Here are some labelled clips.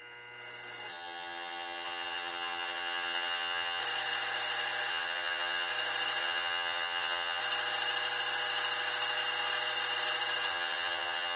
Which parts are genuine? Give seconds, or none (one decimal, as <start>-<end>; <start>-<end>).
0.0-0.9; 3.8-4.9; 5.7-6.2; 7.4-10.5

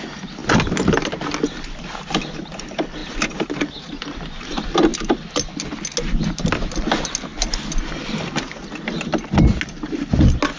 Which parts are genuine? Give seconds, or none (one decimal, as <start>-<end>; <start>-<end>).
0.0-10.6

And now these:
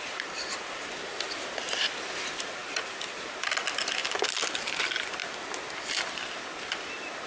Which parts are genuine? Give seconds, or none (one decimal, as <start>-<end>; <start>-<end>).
0.0-7.3